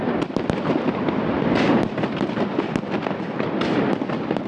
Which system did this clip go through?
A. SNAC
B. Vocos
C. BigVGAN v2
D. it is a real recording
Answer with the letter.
C